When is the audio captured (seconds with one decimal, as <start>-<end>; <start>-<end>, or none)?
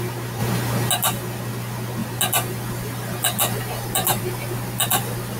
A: 0.0-5.4